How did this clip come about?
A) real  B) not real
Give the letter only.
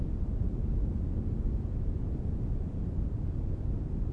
A